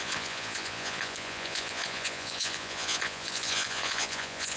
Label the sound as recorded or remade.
remade